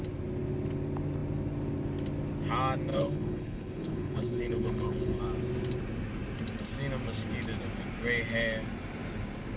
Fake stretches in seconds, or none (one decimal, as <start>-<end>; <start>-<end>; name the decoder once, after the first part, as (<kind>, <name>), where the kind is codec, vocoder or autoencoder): 2.9-5.2 (codec, HILCodec)